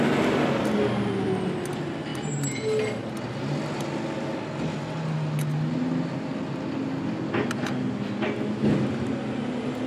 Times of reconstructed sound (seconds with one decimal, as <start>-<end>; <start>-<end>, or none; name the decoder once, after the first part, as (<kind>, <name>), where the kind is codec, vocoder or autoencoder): none